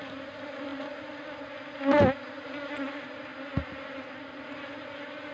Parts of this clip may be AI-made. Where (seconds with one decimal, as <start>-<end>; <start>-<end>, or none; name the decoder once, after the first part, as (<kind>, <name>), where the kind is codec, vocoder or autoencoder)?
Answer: none